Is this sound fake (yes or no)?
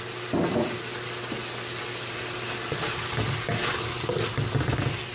no